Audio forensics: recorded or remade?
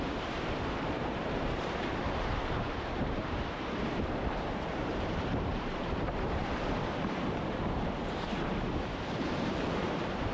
remade